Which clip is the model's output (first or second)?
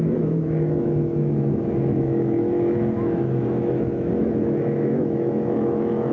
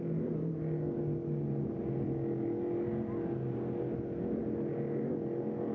first